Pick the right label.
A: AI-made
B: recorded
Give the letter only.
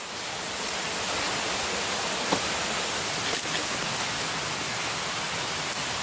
B